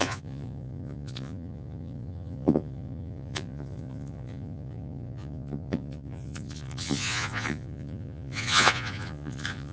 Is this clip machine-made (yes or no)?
yes